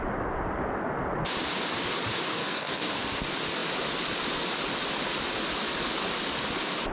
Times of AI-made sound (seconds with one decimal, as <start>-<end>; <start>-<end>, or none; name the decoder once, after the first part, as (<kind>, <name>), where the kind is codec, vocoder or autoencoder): 2.3-3.2 (codec, SNAC)